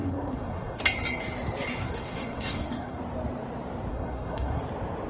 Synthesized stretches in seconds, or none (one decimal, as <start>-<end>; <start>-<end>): 0.0-0.8; 1.8-3.0; 3.9-4.6